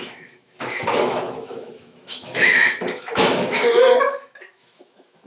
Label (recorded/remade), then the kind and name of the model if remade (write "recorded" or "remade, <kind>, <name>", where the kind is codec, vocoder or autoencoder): remade, autoencoder, DAC-VAE